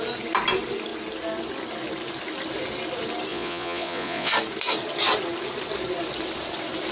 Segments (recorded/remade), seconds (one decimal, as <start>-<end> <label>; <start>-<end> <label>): 0.0-3.3 recorded; 3.3-4.3 remade; 4.3-6.9 recorded